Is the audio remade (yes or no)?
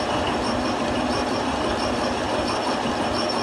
no